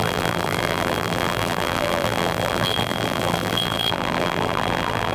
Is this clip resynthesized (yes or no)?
yes